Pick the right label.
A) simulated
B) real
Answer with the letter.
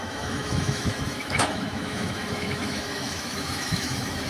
A